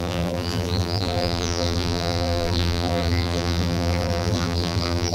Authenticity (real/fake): fake